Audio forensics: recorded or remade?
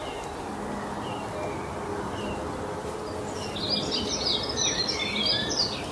recorded